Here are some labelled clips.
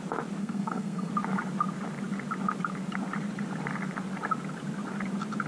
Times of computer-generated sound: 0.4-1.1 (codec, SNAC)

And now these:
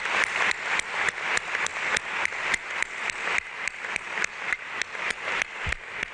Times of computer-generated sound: none

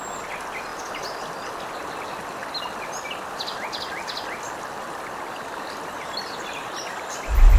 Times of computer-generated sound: none

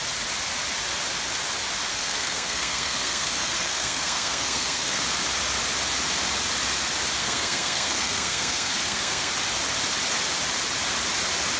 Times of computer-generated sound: 1.9-5.0 (codec, SNAC); 7.2-9.3